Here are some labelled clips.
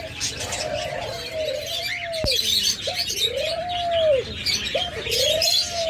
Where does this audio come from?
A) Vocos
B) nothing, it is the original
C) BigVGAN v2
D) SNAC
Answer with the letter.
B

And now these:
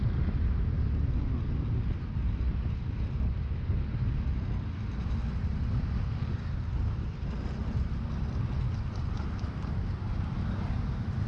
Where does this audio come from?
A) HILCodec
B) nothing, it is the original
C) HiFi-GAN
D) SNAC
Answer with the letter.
B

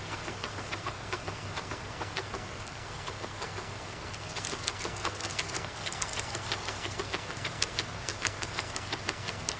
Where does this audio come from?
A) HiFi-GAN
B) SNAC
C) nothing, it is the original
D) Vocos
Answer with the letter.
B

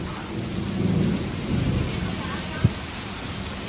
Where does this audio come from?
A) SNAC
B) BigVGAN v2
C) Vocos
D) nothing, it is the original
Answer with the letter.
D